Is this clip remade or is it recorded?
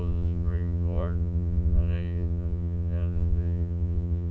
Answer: remade